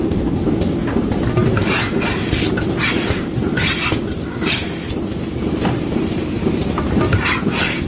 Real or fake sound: real